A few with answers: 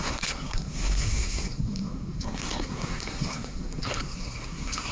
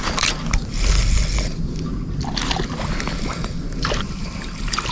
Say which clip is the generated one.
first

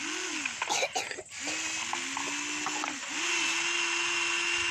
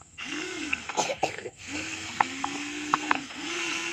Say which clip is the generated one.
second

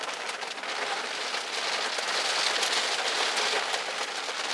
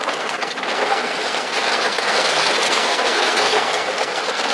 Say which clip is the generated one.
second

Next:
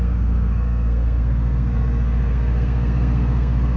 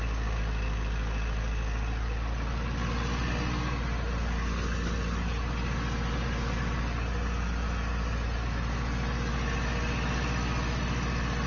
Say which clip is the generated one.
first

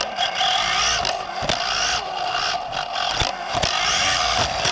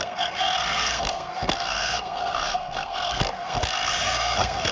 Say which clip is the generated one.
second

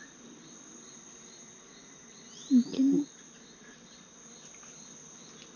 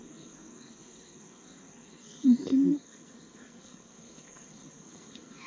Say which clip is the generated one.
second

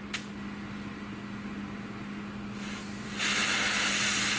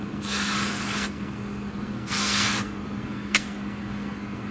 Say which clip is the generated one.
second